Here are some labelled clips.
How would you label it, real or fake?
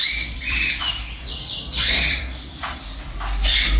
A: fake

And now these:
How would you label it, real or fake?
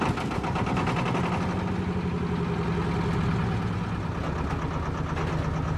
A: real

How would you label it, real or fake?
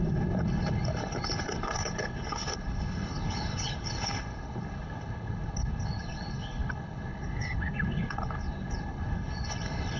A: fake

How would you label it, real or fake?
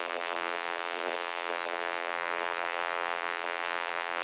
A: fake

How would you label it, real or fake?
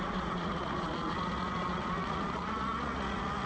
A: fake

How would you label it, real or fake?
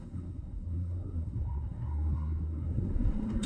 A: fake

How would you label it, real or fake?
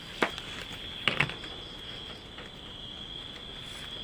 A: real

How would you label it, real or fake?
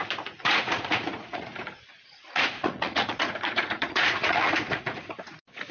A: fake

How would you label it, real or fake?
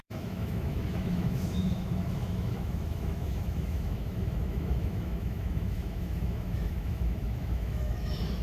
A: fake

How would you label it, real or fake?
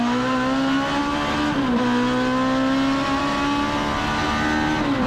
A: real